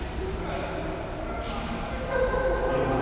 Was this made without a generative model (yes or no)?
yes